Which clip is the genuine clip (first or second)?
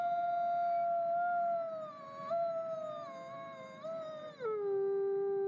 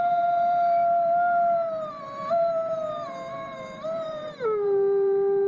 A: first